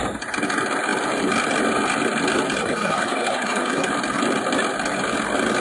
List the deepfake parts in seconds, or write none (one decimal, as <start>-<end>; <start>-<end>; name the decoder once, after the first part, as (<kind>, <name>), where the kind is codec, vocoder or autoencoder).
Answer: 2.6-3.9 (codec, SNAC)